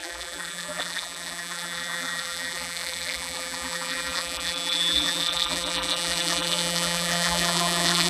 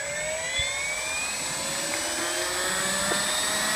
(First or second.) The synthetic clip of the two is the first